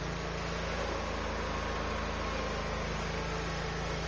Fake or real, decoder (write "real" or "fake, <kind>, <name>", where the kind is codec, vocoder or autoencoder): real